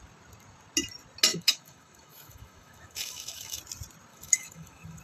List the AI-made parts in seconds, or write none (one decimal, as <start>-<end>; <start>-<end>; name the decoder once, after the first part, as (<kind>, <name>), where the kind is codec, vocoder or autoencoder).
1.3-3.6 (autoencoder, DAC-VAE); 4.1-5.0